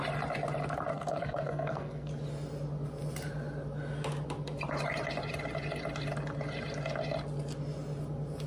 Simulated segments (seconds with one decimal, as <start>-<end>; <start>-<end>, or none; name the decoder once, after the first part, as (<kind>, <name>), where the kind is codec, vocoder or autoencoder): 0.9-2.1 (codec, SNAC)